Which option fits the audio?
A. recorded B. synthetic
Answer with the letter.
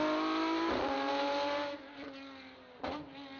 A